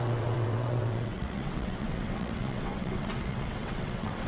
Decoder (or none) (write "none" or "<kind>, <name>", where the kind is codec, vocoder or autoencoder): vocoder, WaveNeXt